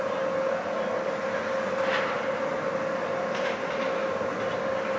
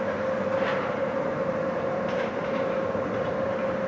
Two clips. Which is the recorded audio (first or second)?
first